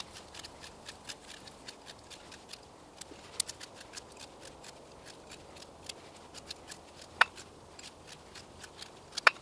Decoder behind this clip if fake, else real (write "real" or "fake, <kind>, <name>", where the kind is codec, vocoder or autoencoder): real